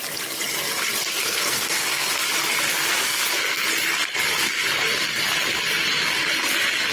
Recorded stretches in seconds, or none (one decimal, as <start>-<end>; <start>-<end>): 0.0-1.2; 2.1-2.7; 3.6-6.9

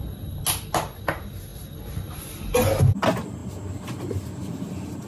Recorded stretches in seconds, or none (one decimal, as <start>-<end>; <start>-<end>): 0.0-5.1

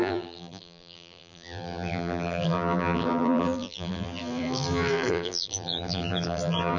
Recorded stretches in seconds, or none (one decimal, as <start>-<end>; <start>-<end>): none

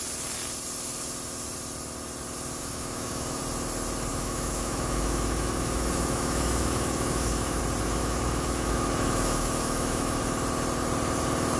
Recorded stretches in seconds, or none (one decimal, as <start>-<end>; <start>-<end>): 0.0-2.6; 3.4-4.1; 7.6-8.0; 10.2-11.6

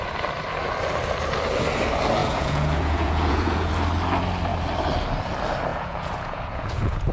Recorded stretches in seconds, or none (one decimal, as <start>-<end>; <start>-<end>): 0.0-2.2; 3.7-5.7